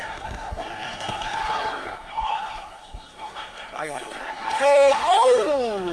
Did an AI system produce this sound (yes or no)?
yes